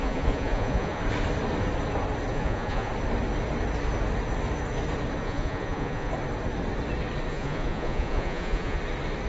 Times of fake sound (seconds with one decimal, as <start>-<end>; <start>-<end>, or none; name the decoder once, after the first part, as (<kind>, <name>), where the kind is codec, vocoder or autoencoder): 0.0-1.0 (vocoder, Vocos); 2.3-2.9; 5.2-6.1; 7.3-8.8